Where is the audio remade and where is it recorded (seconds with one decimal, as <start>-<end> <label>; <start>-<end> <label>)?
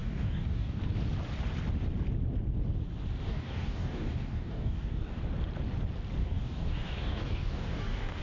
0.0-0.8 remade; 0.8-3.3 recorded; 3.3-5.2 remade; 5.2-6.2 recorded; 6.2-8.2 remade